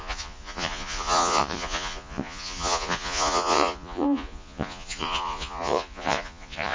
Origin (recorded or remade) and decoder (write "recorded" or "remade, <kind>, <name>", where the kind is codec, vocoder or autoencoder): remade, vocoder, Vocos